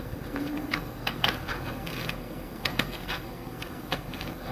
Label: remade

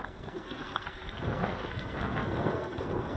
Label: remade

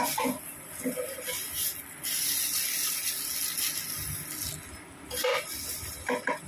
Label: recorded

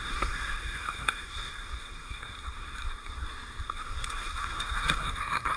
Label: remade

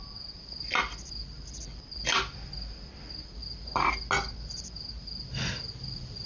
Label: recorded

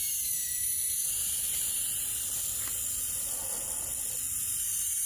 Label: recorded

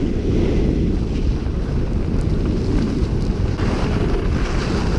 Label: recorded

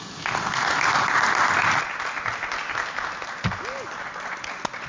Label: recorded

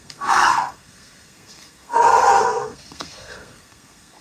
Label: remade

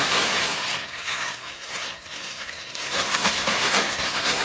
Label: remade